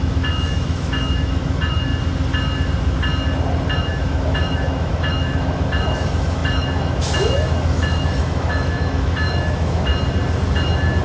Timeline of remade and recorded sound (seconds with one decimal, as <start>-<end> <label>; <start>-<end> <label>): 0.0-1.9 remade; 1.9-3.8 recorded; 3.8-9.9 remade; 9.9-11.0 recorded